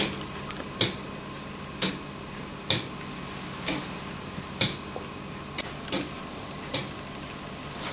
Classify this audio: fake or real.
real